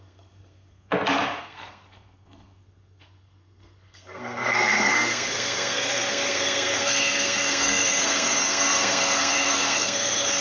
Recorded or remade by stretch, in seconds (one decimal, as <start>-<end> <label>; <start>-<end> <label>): 0.0-0.9 remade; 0.9-1.4 recorded; 1.4-10.4 remade